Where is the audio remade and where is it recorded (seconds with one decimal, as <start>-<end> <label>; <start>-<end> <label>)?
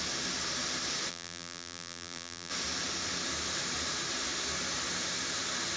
0.0-1.1 recorded; 1.1-2.5 remade; 2.5-5.8 recorded